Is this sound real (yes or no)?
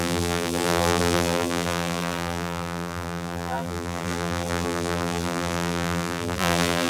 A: no